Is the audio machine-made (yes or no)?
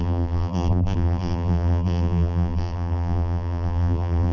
yes